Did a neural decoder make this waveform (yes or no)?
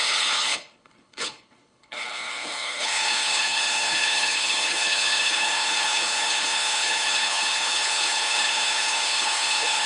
yes